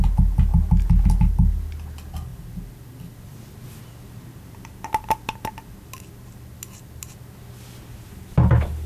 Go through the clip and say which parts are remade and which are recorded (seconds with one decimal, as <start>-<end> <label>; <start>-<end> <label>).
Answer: 0.0-8.9 recorded